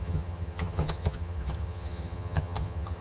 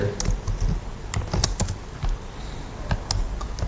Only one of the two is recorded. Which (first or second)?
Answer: second